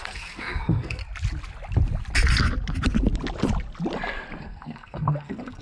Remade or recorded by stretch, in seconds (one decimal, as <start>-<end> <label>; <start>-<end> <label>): 0.0-1.0 remade; 1.0-4.4 recorded; 4.4-5.6 remade